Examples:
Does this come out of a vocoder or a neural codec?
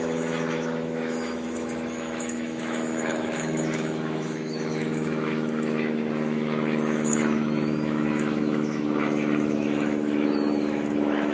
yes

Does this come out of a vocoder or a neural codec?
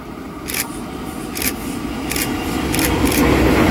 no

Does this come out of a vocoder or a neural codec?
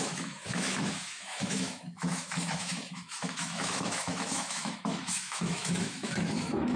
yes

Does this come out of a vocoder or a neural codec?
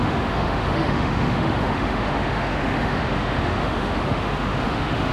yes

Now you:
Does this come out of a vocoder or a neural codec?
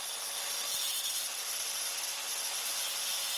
no